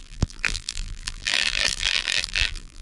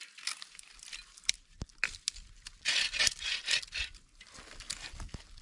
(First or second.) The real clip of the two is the second